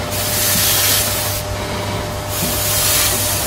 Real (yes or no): yes